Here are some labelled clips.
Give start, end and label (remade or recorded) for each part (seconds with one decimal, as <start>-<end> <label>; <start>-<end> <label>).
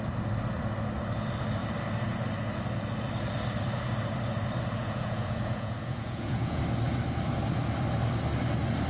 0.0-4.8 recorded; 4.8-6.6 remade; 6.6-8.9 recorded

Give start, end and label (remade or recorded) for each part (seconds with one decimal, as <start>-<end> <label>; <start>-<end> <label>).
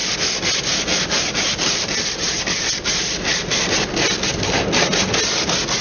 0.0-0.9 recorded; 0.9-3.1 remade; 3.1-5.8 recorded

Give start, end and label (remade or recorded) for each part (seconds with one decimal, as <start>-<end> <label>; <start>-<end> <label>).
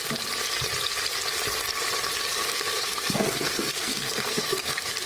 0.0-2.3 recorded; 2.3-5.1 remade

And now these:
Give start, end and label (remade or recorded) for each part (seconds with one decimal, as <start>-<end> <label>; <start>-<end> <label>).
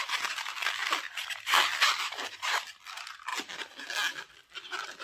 0.0-3.3 remade; 3.3-4.3 recorded; 4.3-5.0 remade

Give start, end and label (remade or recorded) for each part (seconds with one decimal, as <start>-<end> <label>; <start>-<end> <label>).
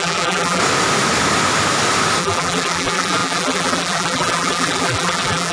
0.0-0.6 remade; 0.6-2.2 recorded; 2.2-5.5 remade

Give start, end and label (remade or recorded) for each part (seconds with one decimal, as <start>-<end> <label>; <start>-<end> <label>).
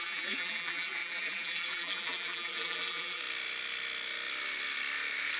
0.0-3.2 remade; 3.2-5.4 recorded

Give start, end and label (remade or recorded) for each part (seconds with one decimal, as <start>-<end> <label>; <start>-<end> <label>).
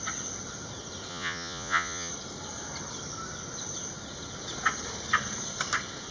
0.0-1.1 recorded; 1.1-2.1 remade; 2.1-6.1 recorded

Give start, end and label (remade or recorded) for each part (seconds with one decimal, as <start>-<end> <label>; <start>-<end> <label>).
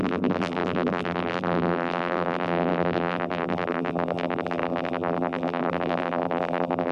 0.0-6.9 remade